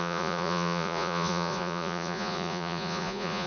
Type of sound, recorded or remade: remade